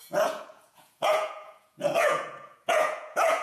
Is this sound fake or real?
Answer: fake